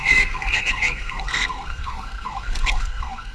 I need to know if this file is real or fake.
fake